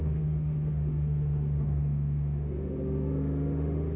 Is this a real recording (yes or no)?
no